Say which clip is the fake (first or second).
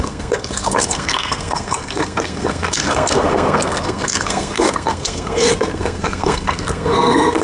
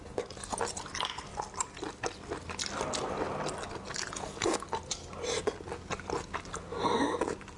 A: first